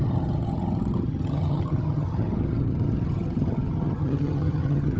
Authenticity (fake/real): fake